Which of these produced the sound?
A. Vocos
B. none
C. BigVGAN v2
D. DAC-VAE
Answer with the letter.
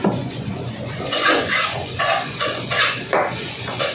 A